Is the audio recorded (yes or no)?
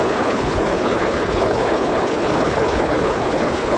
no